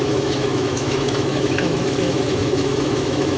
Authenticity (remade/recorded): remade